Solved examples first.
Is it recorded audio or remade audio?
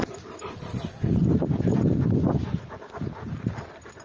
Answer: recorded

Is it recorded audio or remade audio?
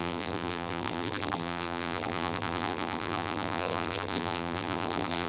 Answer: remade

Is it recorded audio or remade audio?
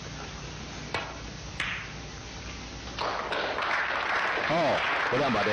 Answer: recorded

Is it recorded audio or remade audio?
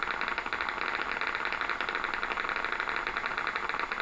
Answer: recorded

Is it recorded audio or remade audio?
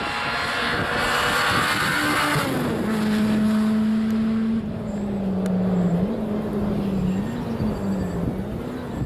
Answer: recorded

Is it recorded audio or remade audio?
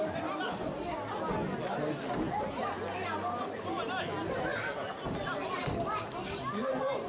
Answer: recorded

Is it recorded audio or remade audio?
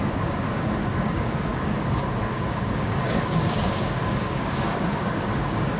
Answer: remade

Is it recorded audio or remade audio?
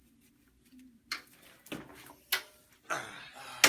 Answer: recorded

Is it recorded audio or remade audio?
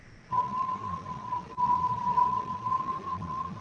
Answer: remade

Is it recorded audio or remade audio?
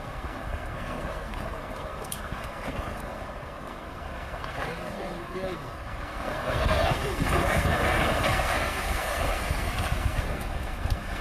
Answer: remade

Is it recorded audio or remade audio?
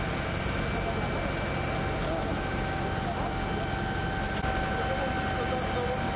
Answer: recorded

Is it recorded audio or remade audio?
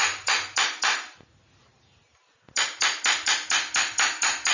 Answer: recorded